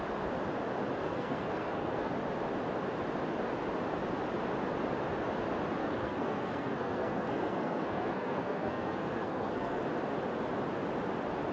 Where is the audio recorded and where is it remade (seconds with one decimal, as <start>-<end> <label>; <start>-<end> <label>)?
0.0-1.0 recorded; 1.0-2.1 remade; 2.1-5.8 recorded; 5.8-9.8 remade; 9.8-11.5 recorded